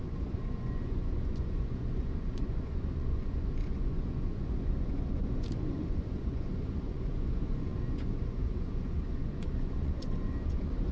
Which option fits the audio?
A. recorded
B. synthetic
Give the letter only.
B